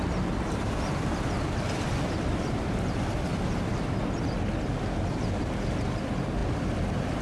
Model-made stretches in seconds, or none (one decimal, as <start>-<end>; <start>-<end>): 0.0-3.3; 5.1-7.2